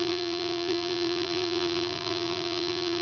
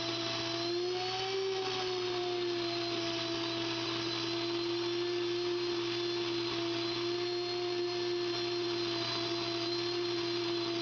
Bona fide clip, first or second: second